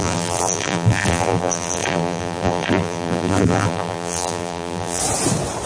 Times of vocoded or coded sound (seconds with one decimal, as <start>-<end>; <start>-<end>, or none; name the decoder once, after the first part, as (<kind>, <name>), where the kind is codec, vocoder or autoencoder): 0.0-5.0 (vocoder, BigVGAN v2)